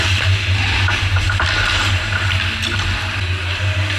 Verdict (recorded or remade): recorded